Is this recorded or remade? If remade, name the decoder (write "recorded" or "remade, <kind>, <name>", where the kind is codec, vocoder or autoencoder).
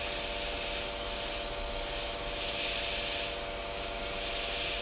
recorded